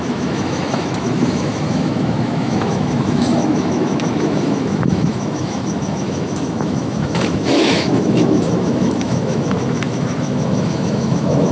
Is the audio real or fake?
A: fake